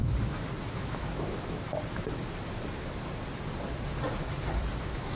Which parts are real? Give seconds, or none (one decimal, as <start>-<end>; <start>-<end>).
0.0-0.7; 1.7-4.8

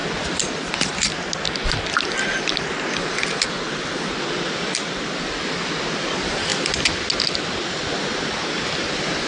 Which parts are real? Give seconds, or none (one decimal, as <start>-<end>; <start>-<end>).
0.0-9.3

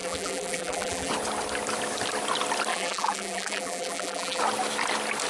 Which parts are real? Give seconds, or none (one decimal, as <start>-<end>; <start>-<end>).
1.1-2.7; 4.4-5.3

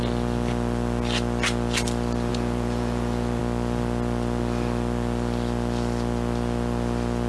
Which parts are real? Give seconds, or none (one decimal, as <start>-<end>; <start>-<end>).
0.0-2.3; 3.4-7.3

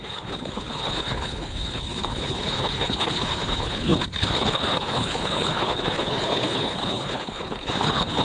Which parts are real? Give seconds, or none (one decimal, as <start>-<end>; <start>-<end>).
none

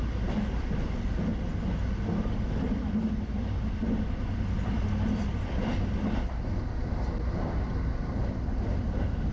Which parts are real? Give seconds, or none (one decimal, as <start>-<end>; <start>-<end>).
0.0-9.3

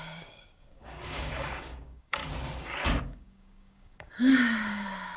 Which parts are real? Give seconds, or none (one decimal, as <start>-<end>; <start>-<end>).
2.2-3.0

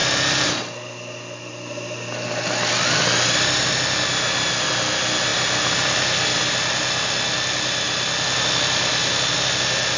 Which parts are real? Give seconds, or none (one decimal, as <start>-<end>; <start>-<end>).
0.0-10.0